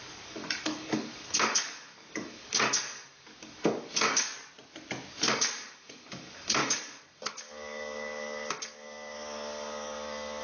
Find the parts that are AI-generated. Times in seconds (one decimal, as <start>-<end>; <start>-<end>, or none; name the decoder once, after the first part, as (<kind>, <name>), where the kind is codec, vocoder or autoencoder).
0.0-4.3 (codec, DAC); 5.1-10.4